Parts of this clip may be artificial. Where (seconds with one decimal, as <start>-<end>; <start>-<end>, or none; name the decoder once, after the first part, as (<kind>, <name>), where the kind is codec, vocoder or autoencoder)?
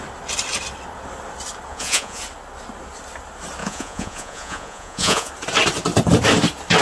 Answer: 1.7-2.2 (vocoder, Vocos); 3.6-5.3